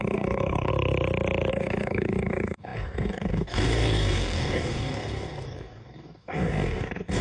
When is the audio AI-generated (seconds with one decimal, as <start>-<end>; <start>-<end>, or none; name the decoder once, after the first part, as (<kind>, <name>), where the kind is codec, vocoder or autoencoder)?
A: 0.0-0.7 (codec, DAC); 1.5-7.2